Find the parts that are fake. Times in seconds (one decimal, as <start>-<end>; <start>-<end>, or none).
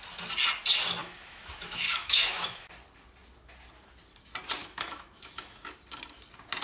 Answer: 1.0-2.7; 4.6-5.7